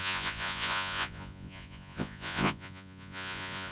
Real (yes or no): no